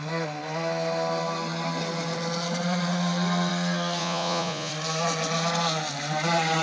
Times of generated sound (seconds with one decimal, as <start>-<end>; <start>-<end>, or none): 4.0-4.7